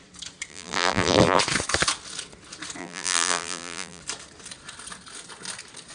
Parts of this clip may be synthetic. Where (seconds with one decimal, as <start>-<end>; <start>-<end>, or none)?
0.5-1.4; 2.8-4.0